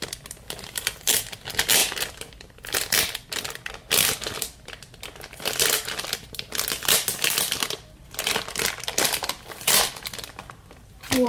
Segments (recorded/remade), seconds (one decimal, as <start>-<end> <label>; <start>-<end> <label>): 0.0-11.3 recorded

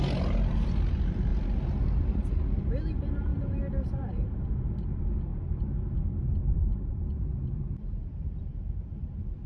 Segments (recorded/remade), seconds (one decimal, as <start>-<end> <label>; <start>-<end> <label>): 0.0-3.3 recorded; 3.3-4.4 remade; 4.4-5.3 recorded; 5.3-9.5 remade

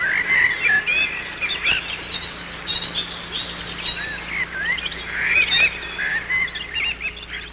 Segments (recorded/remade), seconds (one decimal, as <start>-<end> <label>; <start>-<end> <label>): 0.0-7.5 recorded

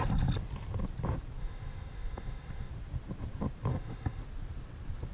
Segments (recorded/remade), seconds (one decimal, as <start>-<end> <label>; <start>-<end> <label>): 0.0-1.4 recorded; 1.4-2.7 remade; 2.7-3.7 recorded; 3.7-4.2 remade; 4.2-5.1 recorded